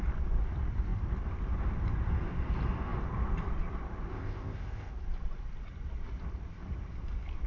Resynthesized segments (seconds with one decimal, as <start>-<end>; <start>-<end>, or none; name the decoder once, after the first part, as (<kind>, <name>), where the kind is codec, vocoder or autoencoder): 4.1-4.9 (codec, ZipCodec)